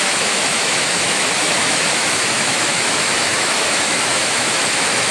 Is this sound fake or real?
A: fake